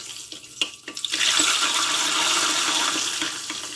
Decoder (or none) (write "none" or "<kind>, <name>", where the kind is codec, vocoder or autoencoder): none